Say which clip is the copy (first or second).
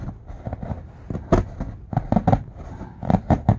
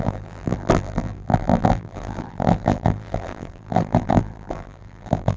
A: second